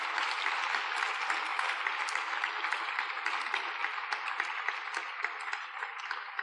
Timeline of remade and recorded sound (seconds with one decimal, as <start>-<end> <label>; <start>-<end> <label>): 0.0-6.4 recorded